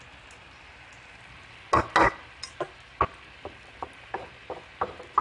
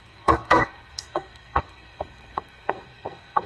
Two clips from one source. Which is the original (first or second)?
first